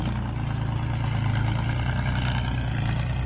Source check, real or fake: real